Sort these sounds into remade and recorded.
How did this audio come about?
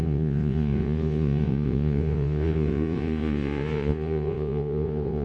remade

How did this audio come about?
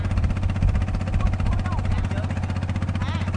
recorded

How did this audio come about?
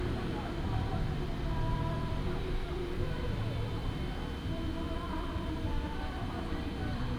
remade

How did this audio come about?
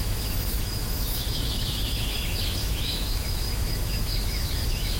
remade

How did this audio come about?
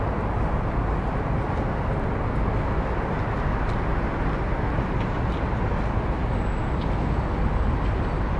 recorded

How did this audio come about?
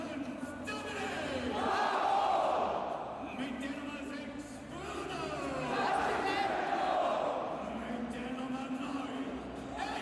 remade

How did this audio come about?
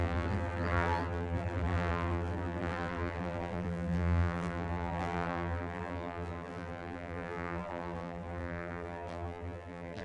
remade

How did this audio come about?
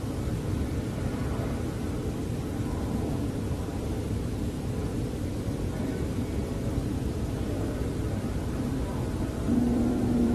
remade